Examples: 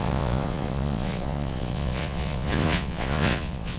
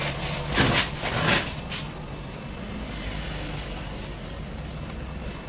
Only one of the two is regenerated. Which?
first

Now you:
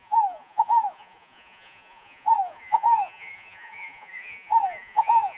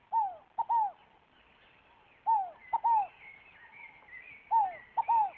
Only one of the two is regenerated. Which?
first